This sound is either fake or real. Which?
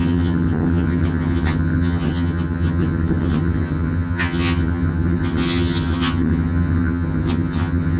fake